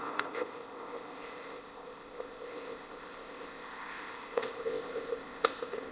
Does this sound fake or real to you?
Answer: fake